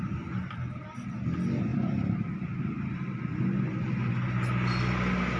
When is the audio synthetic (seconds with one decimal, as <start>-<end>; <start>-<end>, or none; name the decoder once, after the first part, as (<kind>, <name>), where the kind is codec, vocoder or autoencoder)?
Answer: 1.7-2.6 (vocoder, BigVGAN v2)